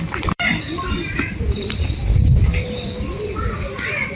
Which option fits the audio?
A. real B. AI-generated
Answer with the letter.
B